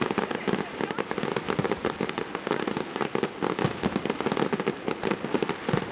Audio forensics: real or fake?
real